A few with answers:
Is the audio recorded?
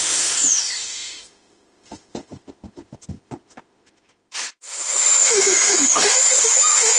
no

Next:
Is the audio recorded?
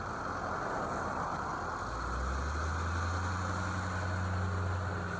yes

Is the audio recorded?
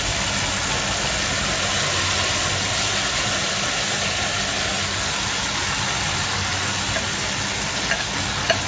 yes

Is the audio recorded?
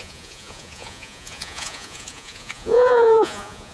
no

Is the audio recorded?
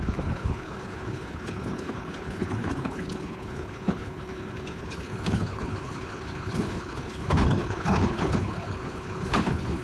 no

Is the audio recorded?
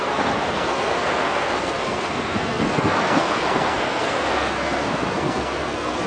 no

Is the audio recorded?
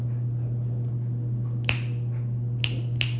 yes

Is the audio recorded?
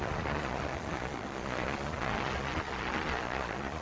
no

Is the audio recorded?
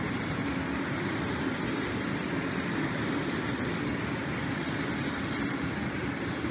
yes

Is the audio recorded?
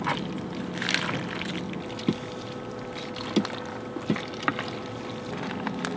yes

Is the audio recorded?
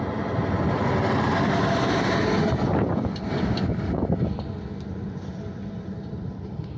yes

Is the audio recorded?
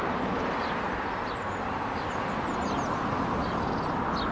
yes